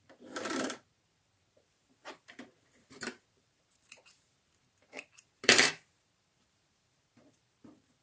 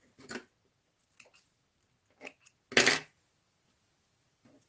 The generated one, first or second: first